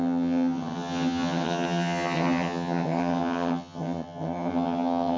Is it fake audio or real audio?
fake